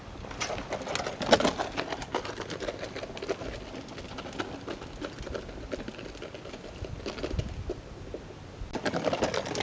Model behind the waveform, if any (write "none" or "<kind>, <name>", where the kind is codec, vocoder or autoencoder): none